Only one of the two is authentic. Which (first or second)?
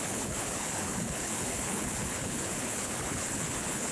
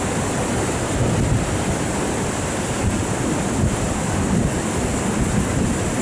second